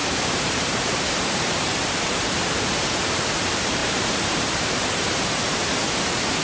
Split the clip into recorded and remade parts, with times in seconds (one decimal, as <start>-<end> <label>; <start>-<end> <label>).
0.0-6.4 remade